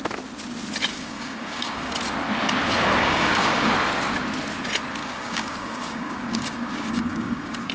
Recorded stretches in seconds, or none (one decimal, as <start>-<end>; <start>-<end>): 0.0-0.9; 1.9-3.0; 3.7-5.0